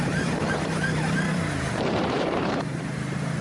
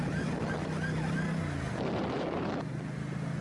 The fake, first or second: first